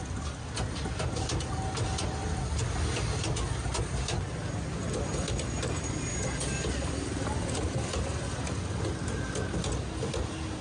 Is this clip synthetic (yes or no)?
no